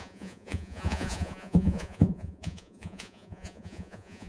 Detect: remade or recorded remade